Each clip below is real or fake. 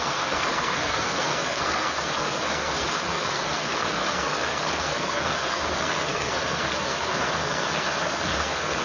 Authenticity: fake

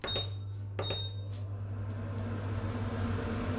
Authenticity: real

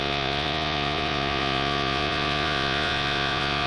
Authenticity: fake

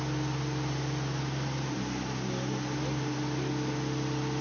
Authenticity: real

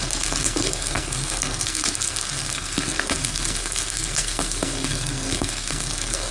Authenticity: fake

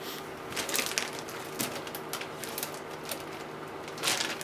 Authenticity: real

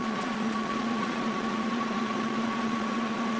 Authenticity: fake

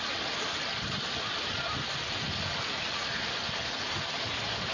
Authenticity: real